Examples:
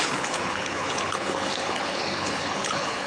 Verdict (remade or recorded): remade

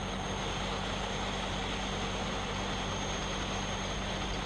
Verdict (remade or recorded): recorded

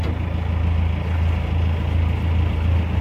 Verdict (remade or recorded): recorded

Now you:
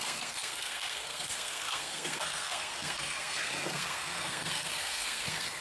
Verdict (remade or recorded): remade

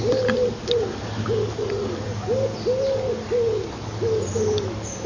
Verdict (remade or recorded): recorded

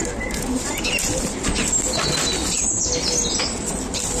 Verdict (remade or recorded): recorded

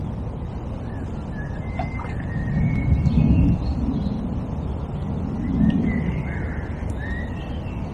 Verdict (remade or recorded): recorded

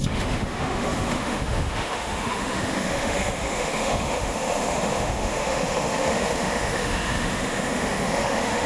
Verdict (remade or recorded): remade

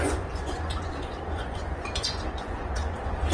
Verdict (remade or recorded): remade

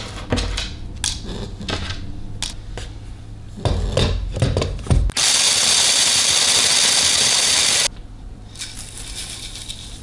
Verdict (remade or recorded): recorded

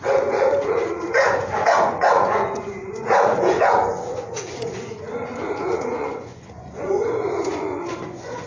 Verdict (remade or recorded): remade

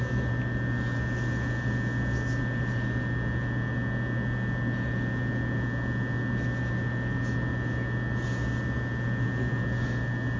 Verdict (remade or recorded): recorded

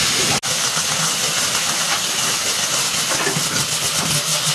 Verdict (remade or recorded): recorded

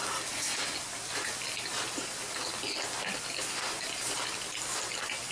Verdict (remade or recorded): recorded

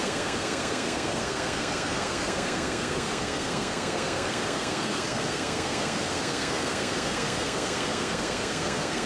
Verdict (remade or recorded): remade